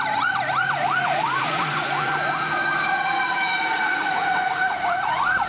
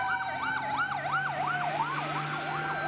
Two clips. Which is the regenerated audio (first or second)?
first